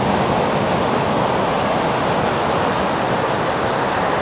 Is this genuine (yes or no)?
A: yes